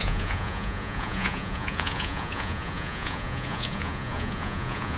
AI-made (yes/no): yes